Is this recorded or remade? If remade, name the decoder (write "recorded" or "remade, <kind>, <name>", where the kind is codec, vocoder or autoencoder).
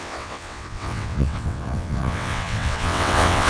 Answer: remade, vocoder, WaveNeXt